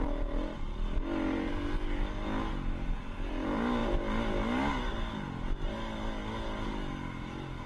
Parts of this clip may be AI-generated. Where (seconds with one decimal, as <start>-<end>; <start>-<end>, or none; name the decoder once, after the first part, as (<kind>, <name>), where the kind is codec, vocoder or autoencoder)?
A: none